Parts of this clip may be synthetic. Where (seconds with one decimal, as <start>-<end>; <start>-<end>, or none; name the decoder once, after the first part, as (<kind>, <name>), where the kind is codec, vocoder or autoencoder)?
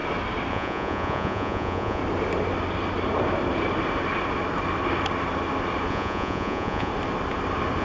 0.5-2.0 (vocoder, Vocos); 5.9-6.9